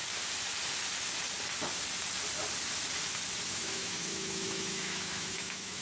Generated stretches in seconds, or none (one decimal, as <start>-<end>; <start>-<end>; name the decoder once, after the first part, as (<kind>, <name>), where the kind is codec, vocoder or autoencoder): 3.5-5.8 (autoencoder, DAC-VAE)